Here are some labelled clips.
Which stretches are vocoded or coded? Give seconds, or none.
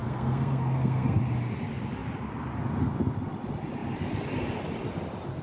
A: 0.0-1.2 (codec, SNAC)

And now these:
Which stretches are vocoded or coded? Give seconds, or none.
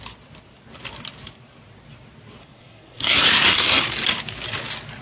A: 2.4-3.8 (codec, SNAC)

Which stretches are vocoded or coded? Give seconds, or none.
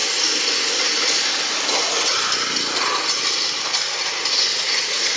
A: 4.5-5.2 (vocoder, Vocos)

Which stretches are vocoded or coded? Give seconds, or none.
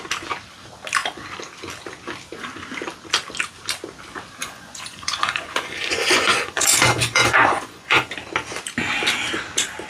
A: 4.4-8.1 (vocoder, Vocos)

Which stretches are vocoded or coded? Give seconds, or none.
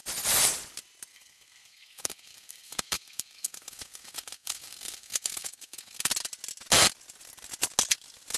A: 1.1-6.1 (codec, SNAC)